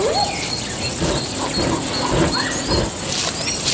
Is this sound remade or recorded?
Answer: recorded